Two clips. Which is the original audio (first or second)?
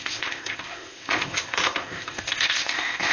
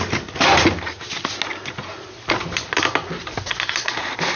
second